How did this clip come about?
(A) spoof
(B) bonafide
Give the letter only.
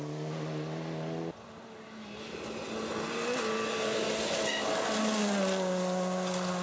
B